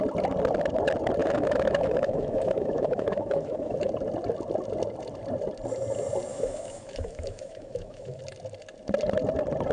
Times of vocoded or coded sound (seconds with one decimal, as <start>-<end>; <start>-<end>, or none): 1.2-3.9; 6.3-8.2